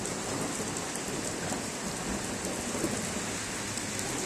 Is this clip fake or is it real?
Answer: real